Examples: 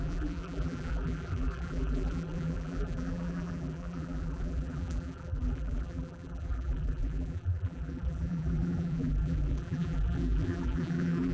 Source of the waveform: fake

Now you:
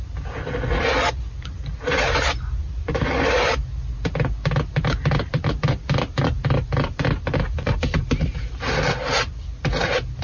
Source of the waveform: real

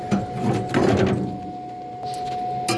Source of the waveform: real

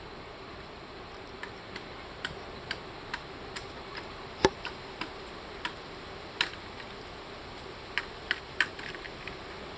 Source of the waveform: real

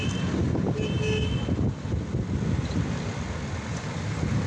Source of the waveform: real